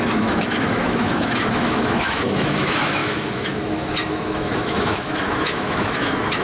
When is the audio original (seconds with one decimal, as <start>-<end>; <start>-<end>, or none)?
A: none